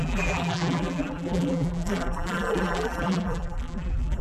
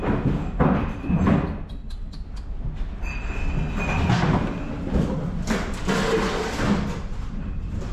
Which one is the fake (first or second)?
first